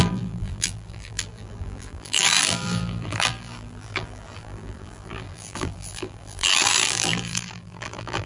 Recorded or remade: remade